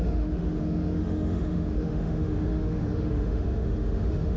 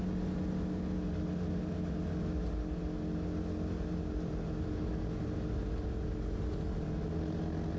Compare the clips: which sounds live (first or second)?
second